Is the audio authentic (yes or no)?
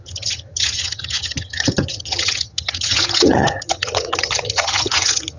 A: no